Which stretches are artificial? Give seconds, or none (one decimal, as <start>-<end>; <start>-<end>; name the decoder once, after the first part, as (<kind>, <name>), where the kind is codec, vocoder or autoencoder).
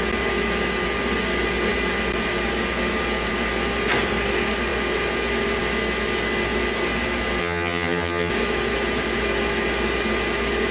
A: 7.4-8.3 (vocoder, HiFi-GAN)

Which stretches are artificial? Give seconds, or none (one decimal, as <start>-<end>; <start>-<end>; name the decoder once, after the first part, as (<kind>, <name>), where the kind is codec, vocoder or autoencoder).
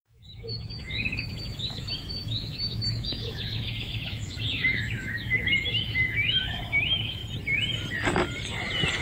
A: 0.0-7.2 (autoencoder, DAC-VAE)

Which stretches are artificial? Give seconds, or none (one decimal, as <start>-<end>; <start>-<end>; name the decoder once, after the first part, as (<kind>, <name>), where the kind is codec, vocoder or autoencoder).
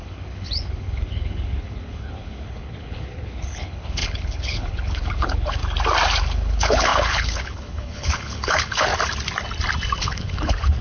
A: 0.0-5.6 (codec, HILCodec); 6.2-8.9; 10.0-10.8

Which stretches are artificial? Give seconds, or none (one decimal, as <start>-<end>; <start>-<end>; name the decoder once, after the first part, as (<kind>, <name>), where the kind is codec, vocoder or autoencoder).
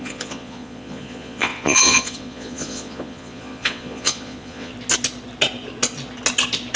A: 0.0-4.7 (vocoder, Vocos)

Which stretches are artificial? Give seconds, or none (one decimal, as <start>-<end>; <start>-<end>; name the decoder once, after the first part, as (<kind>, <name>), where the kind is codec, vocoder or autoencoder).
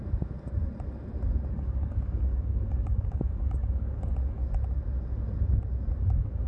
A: 1.5-4.4 (codec, DAC); 6.0-6.5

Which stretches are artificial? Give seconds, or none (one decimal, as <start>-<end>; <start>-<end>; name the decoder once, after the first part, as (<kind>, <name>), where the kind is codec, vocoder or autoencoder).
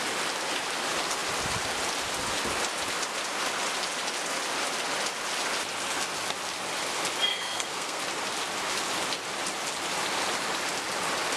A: 7.3-8.0 (codec, SNAC)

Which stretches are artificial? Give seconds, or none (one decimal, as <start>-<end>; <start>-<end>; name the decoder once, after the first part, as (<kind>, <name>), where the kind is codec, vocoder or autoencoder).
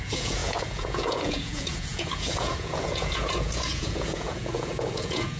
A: 0.0-5.4 (vocoder, Vocos)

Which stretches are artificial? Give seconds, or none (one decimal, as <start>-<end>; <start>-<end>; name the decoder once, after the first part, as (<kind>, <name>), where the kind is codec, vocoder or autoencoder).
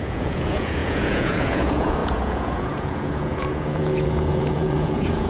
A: 0.0-5.3 (vocoder, Vocos)